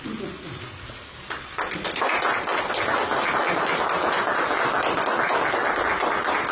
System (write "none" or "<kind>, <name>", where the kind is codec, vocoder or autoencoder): none